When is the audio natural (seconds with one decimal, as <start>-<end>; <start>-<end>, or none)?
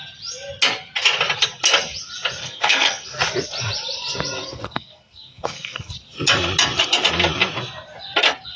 0.0-2.4; 3.2-4.4; 5.9-8.6